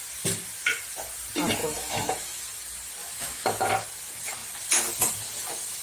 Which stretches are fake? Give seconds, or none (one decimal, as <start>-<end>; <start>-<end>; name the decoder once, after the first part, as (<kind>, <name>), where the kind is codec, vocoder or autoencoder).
1.6-2.4 (autoencoder, DAC-VAE); 3.0-3.7